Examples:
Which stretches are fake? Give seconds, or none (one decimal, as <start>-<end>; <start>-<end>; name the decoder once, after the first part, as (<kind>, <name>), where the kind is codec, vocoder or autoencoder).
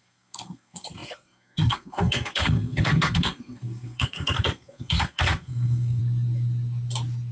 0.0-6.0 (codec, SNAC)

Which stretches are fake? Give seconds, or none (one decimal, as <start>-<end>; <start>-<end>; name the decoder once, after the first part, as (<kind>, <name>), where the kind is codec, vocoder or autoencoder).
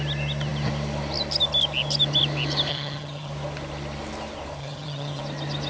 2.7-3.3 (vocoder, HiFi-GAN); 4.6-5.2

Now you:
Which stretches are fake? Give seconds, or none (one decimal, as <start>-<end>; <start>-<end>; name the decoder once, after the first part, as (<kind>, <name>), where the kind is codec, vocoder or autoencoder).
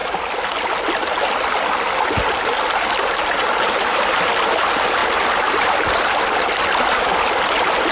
none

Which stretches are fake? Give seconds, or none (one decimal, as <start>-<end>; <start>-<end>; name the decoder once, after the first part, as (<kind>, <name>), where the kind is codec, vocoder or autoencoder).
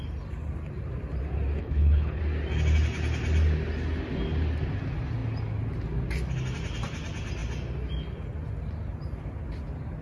1.6-2.2 (codec, HILCodec)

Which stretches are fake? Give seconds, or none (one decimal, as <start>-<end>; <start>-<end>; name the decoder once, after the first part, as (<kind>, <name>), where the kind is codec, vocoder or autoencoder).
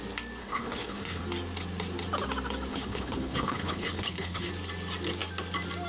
0.4-1.2 (codec, HILCodec); 2.7-4.5